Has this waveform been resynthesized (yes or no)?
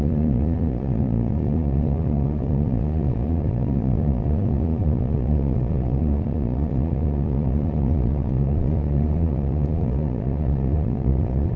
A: yes